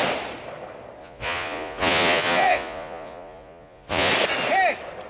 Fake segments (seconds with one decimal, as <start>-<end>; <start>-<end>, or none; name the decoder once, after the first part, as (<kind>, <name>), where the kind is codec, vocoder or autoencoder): 1.0-4.1 (vocoder, Vocos)